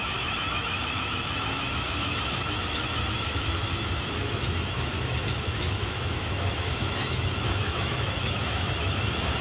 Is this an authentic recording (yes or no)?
no